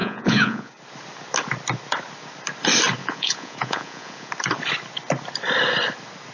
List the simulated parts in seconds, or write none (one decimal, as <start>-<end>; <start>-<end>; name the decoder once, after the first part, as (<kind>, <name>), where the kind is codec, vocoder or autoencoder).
0.0-0.7 (vocoder, Vocos); 3.0-4.3